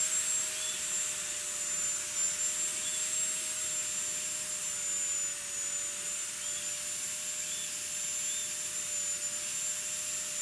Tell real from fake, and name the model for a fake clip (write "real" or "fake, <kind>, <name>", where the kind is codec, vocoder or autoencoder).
real